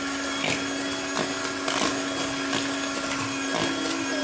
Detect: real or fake real